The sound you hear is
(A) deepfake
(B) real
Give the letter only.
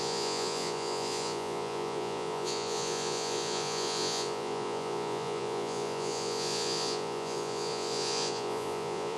A